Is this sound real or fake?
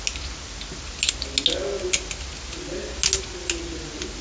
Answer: real